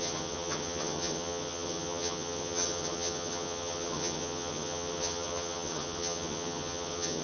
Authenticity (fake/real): fake